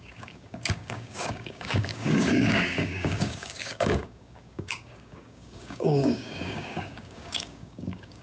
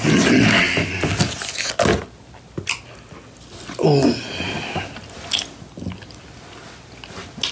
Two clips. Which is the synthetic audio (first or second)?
first